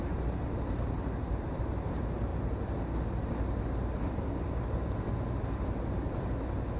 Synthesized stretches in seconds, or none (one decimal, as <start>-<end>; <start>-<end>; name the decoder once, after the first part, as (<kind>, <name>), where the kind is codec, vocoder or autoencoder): 0.0-2.3 (vocoder, BigVGAN v2)